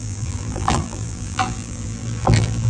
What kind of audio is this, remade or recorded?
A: remade